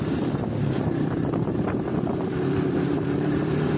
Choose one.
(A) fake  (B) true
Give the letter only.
A